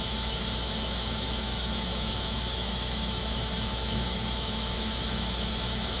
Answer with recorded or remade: remade